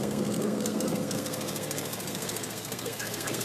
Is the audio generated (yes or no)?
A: yes